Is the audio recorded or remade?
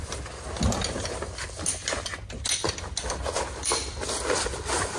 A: recorded